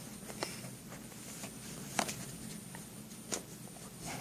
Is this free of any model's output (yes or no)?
yes